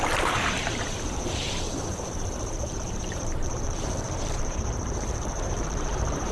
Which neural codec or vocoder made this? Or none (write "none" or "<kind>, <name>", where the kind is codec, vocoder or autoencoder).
vocoder, BigVGAN v2